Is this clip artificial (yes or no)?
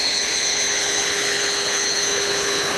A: yes